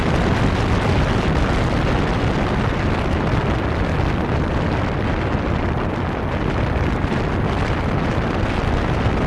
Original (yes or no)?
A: yes